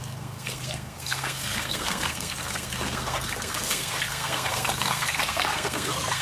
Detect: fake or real fake